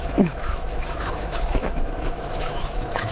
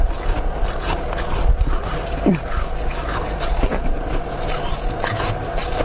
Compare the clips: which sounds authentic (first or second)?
second